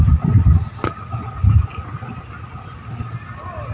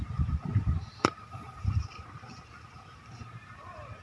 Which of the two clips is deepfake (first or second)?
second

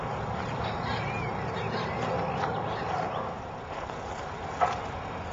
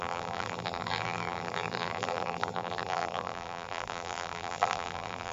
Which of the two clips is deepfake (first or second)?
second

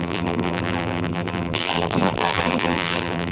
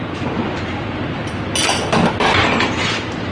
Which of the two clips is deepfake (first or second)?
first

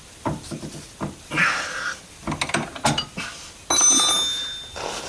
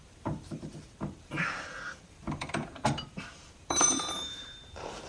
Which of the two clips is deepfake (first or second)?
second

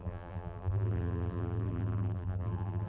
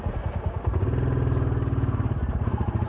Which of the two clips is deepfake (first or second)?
first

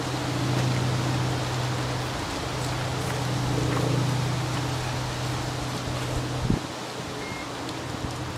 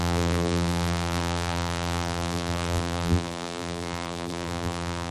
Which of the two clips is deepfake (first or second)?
second